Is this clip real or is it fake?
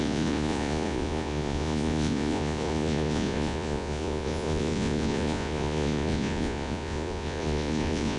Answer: fake